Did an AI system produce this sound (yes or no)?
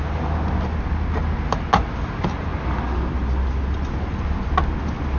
no